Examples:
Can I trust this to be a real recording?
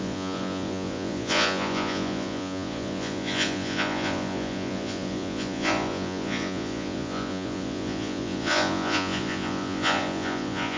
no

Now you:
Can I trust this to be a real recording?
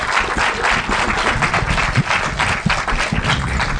yes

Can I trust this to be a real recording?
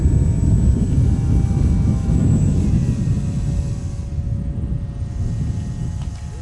yes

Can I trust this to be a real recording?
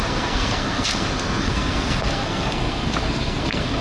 no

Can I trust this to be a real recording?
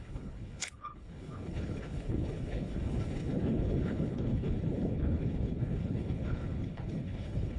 no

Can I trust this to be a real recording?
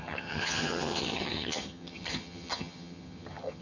no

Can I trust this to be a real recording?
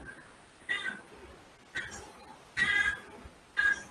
yes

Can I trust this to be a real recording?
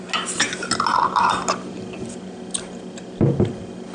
yes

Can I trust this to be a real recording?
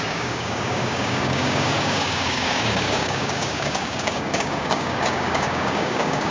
no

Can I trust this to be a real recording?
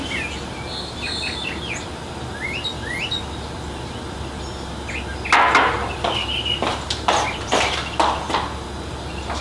yes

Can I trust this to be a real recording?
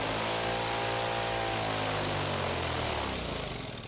yes